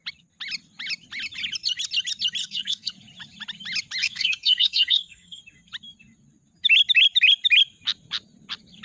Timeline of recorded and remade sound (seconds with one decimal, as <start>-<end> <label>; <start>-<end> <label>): 0.0-2.4 recorded; 2.4-2.9 remade; 2.9-4.0 recorded; 4.0-5.4 remade; 5.4-8.8 recorded